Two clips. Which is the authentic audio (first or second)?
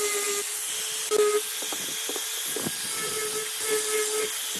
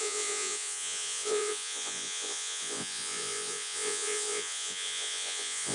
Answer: first